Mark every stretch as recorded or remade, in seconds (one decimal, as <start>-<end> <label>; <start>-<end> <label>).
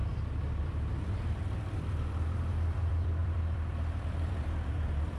0.0-0.6 recorded; 0.6-5.2 remade